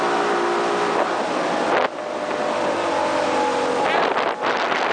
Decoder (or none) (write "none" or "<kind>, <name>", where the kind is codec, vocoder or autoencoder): none